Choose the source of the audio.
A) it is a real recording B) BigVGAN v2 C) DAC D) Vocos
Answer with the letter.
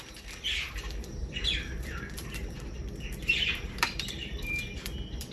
B